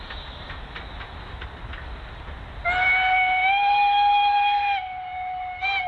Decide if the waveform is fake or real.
real